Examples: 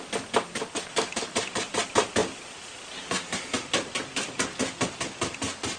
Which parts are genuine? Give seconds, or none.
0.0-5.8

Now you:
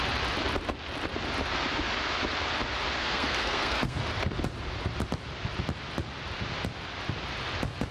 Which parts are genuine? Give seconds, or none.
0.0-3.0; 4.0-7.9